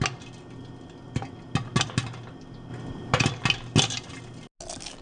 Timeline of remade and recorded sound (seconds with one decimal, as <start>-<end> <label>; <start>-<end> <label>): 0.0-5.0 recorded